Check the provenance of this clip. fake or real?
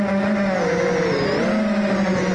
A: real